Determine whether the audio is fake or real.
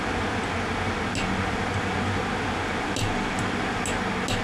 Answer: real